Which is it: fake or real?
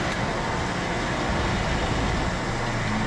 real